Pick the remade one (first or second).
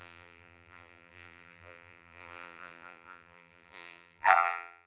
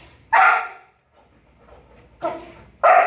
first